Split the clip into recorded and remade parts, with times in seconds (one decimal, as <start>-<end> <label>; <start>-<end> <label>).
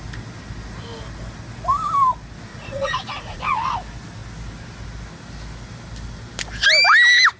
0.0-2.5 recorded; 2.5-3.4 remade; 3.4-7.4 recorded